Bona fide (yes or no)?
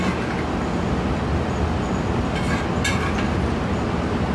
yes